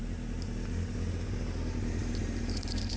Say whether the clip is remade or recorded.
recorded